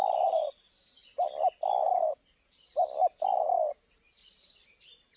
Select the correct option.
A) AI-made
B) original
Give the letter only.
A